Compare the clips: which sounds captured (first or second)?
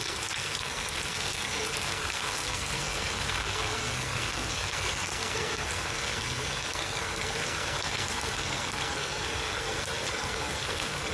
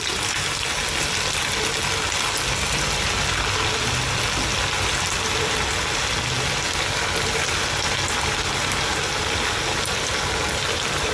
second